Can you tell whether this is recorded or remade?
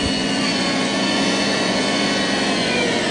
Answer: remade